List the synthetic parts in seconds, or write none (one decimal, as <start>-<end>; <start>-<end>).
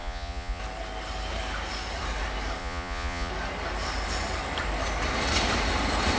0.0-0.6; 2.6-3.3